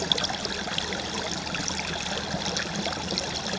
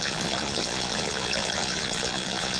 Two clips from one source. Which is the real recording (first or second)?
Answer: first